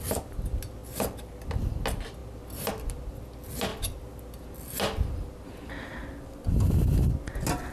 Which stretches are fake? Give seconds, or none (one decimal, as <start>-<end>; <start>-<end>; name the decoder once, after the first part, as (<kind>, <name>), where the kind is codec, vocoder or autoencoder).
none